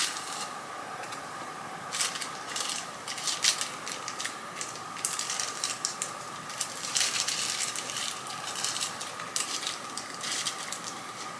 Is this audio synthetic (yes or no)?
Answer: yes